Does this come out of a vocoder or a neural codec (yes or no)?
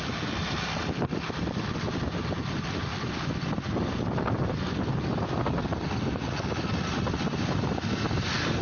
no